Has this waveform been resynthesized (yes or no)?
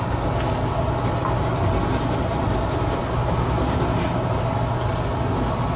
no